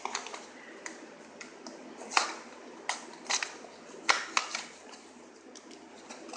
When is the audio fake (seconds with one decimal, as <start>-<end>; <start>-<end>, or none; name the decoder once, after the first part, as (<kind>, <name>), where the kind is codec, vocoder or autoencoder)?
none